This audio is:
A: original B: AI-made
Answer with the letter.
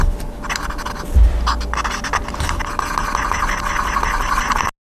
A